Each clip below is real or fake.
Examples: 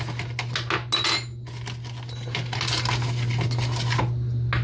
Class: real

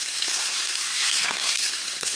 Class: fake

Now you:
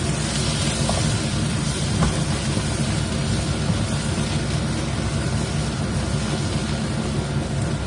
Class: real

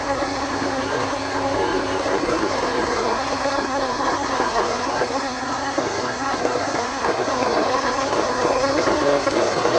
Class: fake